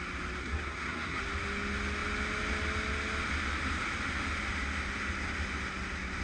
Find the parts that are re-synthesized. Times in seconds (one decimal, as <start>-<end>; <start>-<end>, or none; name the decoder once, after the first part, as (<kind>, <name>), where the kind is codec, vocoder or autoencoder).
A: 0.4-1.2 (codec, SNAC)